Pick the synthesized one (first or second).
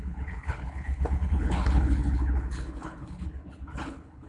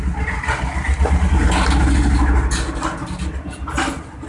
first